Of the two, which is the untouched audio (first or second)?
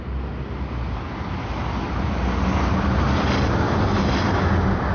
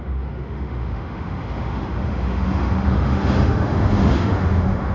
first